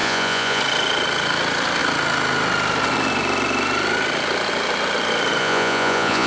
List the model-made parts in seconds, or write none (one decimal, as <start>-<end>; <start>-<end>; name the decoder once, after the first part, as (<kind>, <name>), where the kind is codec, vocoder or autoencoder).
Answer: 0.0-0.6 (vocoder, Vocos); 5.4-6.3